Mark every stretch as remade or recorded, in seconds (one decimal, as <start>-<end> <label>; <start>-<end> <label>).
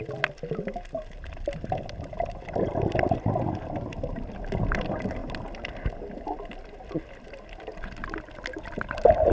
0.0-9.3 recorded